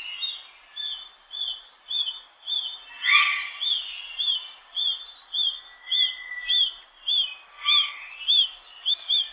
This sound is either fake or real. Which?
real